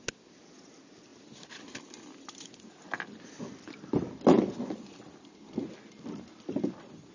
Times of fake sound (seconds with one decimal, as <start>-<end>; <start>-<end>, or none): none